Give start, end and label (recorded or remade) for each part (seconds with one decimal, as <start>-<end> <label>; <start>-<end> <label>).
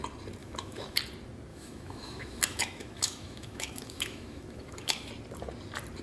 0.0-0.4 recorded; 0.4-1.0 remade; 1.0-1.5 recorded; 1.5-5.1 remade; 5.1-6.0 recorded